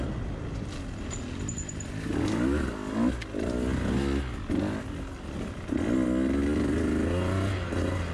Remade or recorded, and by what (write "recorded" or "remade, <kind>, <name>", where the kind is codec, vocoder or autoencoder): recorded